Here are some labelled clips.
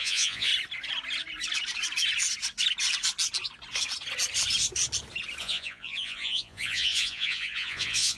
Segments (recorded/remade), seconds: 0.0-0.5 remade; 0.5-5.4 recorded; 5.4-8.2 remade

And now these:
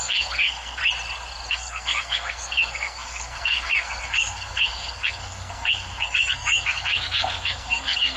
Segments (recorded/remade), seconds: 0.0-0.8 remade; 0.8-1.5 recorded; 1.5-8.2 remade

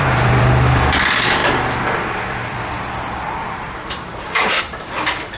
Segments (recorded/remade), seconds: 0.0-5.4 remade

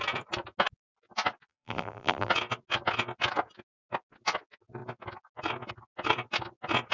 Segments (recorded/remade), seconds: 0.0-1.5 recorded; 1.5-2.3 remade; 2.3-6.9 recorded

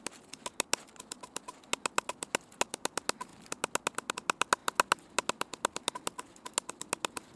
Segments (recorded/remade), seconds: 0.0-7.4 recorded